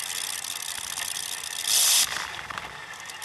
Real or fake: real